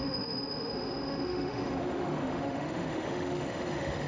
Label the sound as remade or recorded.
remade